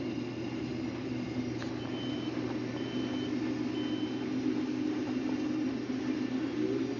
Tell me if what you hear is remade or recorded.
recorded